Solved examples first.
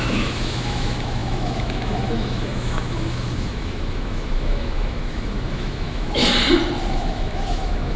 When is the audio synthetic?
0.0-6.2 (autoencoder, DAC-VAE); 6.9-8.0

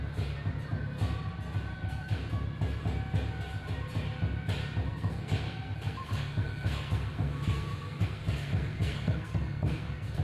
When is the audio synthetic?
1.7-2.3 (codec, SNAC); 4.9-10.2

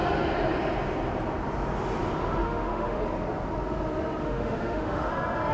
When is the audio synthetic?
2.4-3.0 (autoencoder, DAC-VAE); 4.2-5.1